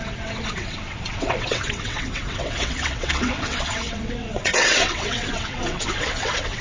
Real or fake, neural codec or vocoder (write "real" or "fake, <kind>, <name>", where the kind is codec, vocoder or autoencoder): fake, vocoder, WaveNeXt